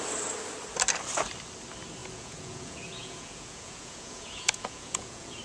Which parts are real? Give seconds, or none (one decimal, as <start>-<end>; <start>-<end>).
0.0-2.0